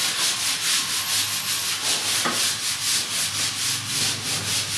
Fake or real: real